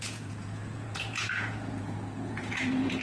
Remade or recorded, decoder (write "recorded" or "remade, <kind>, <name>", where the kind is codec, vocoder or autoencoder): remade, vocoder, Vocos